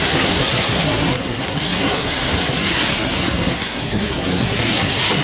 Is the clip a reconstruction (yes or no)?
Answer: yes